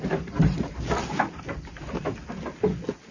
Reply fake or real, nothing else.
real